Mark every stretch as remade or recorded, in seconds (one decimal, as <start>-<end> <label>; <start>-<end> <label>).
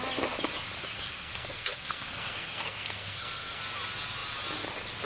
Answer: 0.0-0.9 recorded; 0.9-3.6 remade; 3.6-5.1 recorded